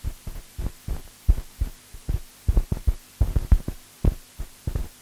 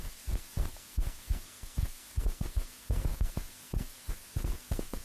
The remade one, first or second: second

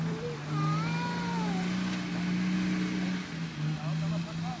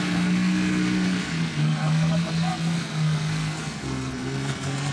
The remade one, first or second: second